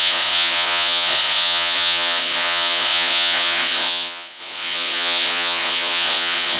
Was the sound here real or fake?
fake